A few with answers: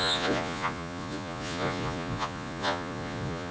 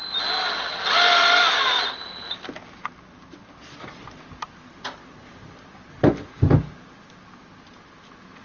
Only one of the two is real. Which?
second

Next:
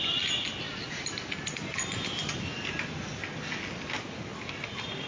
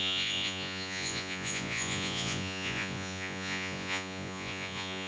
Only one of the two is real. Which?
first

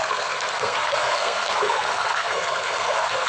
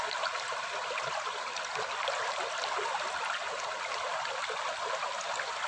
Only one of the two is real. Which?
second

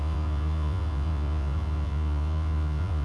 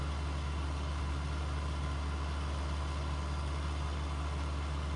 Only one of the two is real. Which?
second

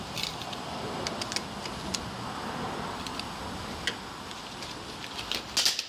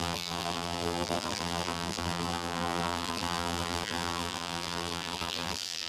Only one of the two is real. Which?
first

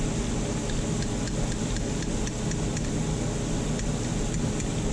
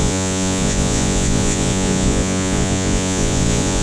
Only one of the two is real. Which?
first